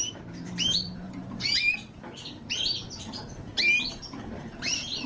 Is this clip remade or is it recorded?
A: remade